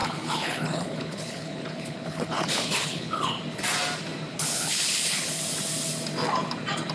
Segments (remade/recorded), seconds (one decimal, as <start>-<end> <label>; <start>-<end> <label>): 0.0-3.4 remade; 3.4-4.3 recorded; 4.3-5.4 remade; 5.4-6.9 recorded